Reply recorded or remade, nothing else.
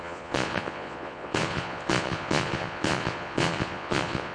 remade